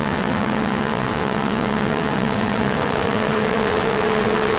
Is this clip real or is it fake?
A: fake